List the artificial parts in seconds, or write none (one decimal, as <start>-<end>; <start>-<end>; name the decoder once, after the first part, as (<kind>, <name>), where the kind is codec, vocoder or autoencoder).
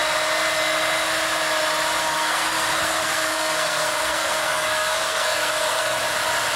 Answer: 2.0-6.0 (codec, SNAC)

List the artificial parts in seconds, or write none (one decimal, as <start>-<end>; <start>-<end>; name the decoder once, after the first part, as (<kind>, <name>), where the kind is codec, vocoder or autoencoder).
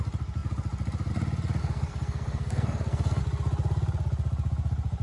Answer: 1.6-3.2 (codec, SNAC)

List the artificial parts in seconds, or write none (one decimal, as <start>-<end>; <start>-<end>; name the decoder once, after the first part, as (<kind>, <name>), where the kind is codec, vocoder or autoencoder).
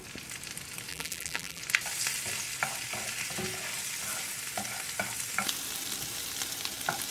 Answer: 0.9-1.6 (vocoder, BigVGAN v2)